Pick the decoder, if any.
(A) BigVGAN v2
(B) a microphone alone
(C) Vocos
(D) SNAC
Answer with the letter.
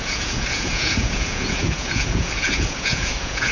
C